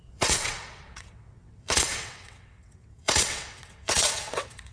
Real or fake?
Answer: fake